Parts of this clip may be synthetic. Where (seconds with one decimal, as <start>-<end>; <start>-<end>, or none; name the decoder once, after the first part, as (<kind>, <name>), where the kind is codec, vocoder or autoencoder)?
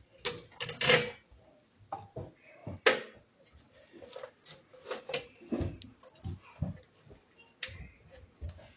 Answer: none